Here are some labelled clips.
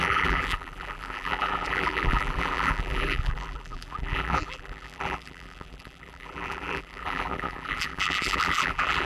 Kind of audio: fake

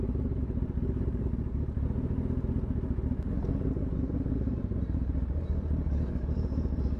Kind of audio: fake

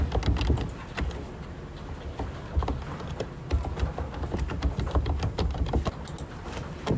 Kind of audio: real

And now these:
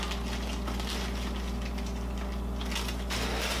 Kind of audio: real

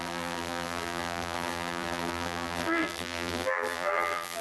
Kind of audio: fake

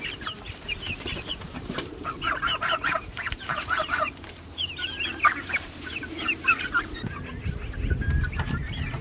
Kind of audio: fake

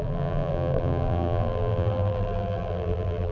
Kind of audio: fake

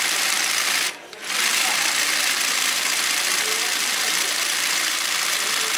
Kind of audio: fake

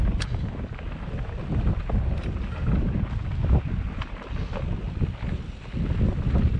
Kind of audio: real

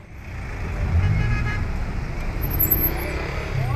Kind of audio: real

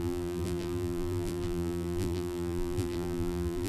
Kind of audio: fake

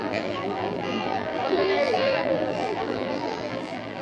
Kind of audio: fake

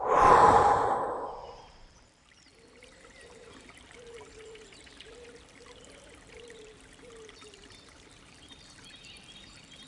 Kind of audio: fake